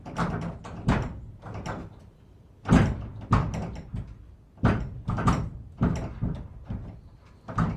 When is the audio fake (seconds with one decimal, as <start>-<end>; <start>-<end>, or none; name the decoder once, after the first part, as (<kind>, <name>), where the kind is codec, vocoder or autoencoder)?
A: none